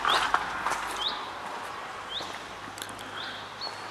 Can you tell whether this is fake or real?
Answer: real